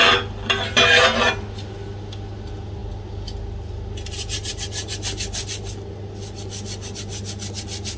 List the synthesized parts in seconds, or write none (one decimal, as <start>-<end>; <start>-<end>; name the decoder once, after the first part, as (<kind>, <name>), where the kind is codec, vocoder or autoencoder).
none

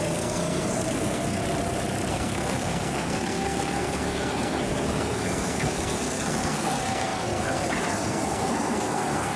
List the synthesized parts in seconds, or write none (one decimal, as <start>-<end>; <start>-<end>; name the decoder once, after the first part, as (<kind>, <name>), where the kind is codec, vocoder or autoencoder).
0.0-1.4 (codec, SNAC); 2.1-9.4

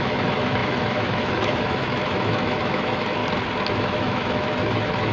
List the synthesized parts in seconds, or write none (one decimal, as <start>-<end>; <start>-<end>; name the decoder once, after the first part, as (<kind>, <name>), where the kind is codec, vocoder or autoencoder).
0.0-3.2 (autoencoder, DAC-VAE); 3.7-5.1

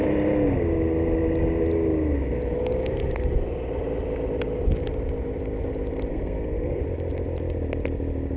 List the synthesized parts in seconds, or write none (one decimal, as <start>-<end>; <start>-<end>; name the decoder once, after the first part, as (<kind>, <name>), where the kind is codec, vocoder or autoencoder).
6.1-6.8 (codec, SNAC)

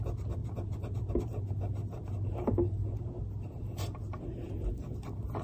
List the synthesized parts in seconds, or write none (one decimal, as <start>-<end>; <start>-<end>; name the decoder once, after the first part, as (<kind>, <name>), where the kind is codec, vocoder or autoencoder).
none